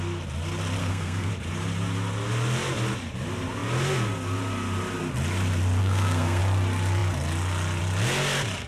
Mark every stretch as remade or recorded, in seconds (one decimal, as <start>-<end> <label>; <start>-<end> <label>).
0.0-0.8 recorded; 0.8-1.3 remade; 1.3-5.8 recorded; 5.8-6.4 remade; 6.4-8.7 recorded